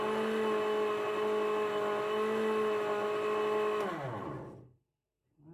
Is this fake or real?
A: real